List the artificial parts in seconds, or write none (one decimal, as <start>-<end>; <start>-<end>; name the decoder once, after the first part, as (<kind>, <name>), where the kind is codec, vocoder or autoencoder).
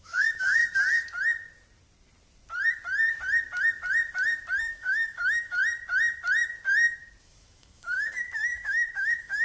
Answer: 0.0-0.6 (autoencoder, DAC-VAE); 4.6-5.6; 7.2-9.4